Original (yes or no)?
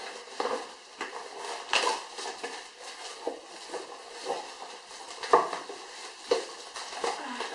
yes